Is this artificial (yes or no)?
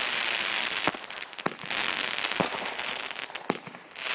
no